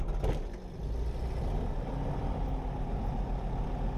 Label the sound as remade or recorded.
recorded